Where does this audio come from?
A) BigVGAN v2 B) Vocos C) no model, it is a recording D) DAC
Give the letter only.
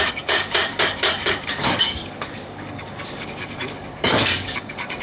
D